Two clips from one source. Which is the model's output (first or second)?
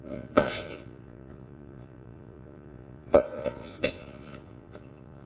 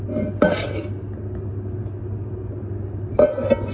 first